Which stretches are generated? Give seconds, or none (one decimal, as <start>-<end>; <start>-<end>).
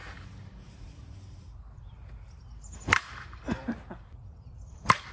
0.0-5.1